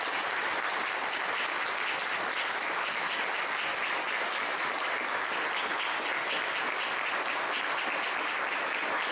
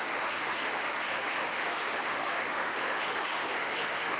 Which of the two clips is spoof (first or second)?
second